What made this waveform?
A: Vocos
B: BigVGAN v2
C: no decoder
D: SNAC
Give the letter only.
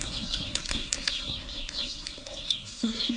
D